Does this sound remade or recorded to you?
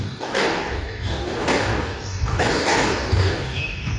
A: remade